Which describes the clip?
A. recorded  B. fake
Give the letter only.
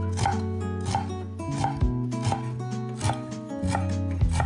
A